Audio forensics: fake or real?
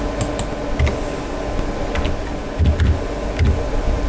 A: real